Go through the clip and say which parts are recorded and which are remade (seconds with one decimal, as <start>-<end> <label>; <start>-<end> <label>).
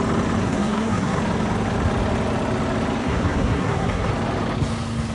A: 0.0-0.4 recorded; 0.4-1.2 remade; 1.2-3.0 recorded; 3.0-4.1 remade; 4.1-5.1 recorded